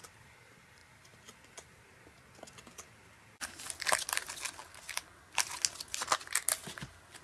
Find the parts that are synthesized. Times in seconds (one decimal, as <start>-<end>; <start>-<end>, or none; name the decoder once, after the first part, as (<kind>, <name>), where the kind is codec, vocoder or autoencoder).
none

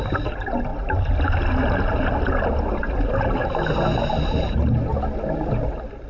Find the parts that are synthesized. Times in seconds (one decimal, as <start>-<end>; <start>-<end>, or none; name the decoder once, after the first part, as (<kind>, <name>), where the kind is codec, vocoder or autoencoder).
none

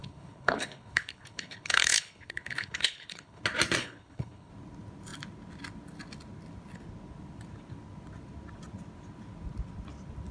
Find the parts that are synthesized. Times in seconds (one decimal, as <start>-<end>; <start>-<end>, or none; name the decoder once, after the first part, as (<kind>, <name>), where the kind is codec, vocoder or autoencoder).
0.0-3.4 (codec, HILCodec); 3.8-4.5